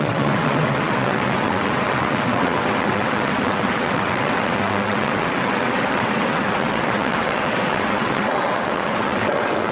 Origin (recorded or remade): remade